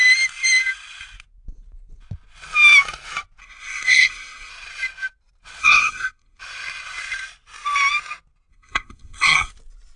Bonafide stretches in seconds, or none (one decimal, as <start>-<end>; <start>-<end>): 0.0-3.4; 4.5-5.6; 6.4-8.5; 9.5-10.0